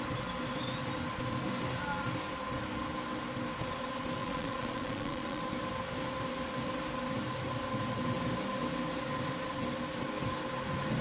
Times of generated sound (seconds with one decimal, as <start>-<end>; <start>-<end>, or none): 4.2-5.4